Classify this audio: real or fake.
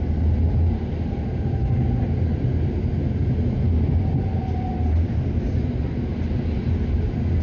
real